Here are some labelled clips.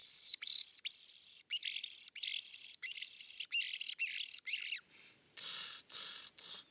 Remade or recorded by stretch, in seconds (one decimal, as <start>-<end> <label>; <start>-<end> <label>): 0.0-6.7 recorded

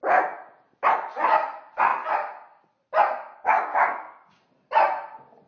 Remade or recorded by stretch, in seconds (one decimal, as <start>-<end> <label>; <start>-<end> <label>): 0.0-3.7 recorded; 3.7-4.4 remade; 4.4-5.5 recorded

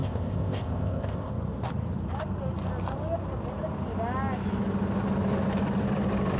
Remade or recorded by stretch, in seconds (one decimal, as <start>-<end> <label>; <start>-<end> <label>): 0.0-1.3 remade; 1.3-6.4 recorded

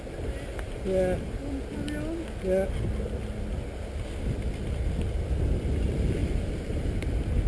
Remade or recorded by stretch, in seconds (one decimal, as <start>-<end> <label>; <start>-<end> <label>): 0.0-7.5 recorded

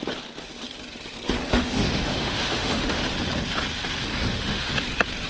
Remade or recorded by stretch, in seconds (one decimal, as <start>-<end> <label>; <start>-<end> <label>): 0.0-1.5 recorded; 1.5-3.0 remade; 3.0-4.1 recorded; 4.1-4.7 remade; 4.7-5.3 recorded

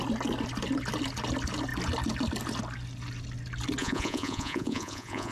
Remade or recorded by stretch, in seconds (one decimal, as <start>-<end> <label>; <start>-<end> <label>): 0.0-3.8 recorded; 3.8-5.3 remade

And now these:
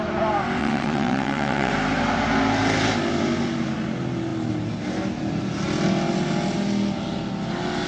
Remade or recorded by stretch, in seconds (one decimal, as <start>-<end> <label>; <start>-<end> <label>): 0.0-0.6 recorded; 0.6-1.7 remade; 1.7-7.9 recorded